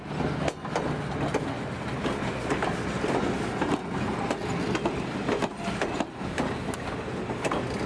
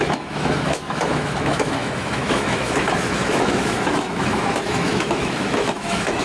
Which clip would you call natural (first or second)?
first